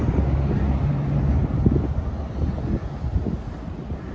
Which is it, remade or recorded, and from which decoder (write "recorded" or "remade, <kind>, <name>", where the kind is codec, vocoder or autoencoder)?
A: recorded